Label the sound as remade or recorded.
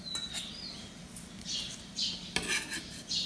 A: recorded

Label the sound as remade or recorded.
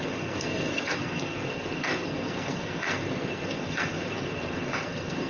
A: remade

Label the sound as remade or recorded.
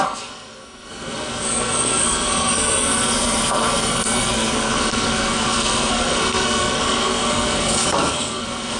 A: remade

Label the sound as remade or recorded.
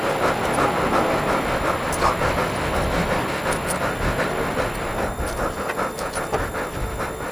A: recorded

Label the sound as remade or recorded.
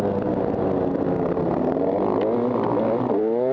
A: recorded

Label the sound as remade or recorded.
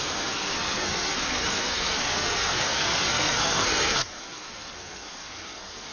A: remade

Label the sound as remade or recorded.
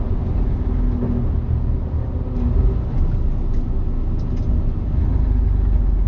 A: recorded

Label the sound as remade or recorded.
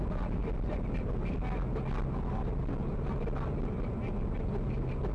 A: recorded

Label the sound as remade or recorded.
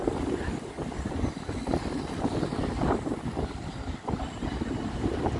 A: recorded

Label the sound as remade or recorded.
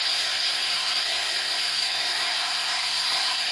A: remade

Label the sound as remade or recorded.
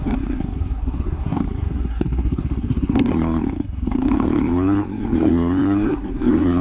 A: remade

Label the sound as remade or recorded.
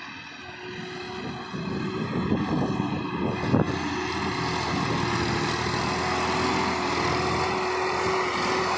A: recorded